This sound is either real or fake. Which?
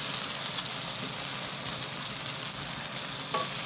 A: real